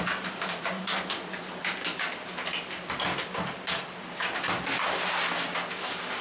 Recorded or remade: recorded